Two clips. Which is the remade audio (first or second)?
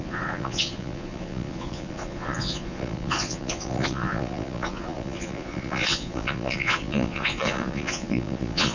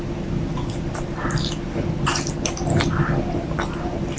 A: first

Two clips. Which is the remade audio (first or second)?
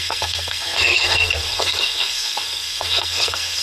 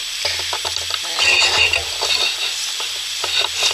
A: first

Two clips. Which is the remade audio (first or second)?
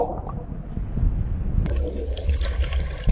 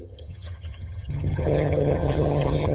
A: second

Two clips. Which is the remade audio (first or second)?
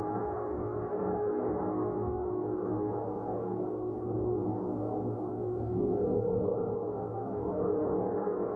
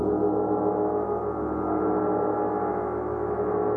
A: first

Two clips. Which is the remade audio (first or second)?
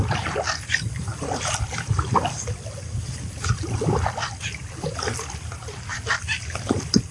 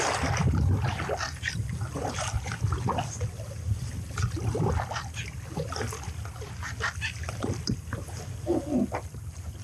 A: first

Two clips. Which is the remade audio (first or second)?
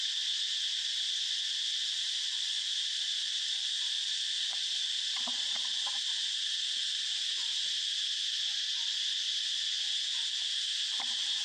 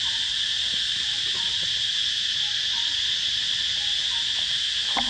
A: first